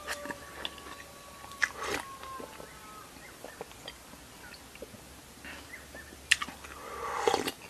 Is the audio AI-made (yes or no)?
no